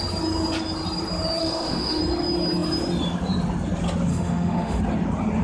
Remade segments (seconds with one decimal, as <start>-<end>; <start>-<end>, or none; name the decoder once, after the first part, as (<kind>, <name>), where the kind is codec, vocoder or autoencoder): 1.4-2.0 (autoencoder, DAC-VAE); 4.1-4.8